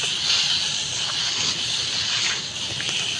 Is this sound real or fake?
real